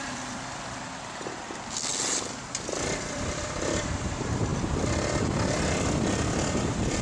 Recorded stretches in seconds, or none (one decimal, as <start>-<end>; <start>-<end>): none